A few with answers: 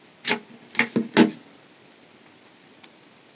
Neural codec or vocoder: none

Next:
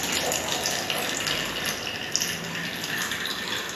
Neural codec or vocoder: none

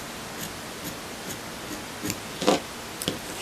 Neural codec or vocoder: none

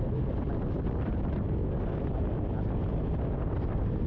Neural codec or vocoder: none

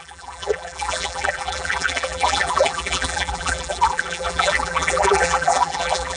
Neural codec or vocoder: vocoder, BigVGAN v2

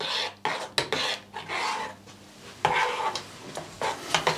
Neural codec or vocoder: none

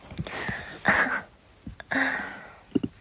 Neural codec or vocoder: none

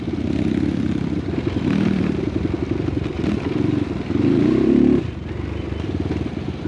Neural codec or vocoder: vocoder, BigVGAN v2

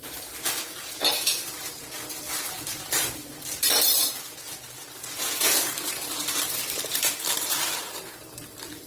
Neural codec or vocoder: vocoder, BigVGAN v2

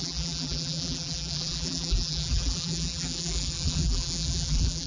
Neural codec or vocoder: vocoder, BigVGAN v2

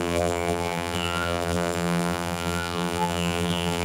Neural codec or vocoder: vocoder, BigVGAN v2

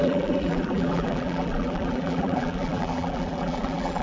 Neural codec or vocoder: vocoder, BigVGAN v2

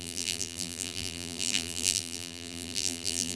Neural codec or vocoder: vocoder, BigVGAN v2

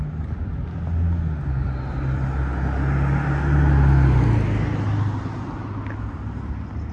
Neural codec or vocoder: none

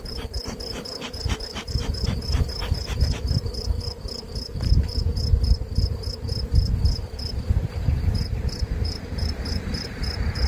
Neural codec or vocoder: vocoder, BigVGAN v2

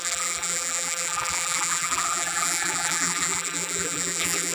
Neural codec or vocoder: vocoder, BigVGAN v2